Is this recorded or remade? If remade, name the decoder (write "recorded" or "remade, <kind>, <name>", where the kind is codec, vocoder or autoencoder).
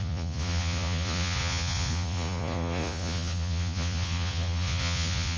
remade, vocoder, Vocos